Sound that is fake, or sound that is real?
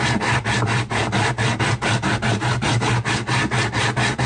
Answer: real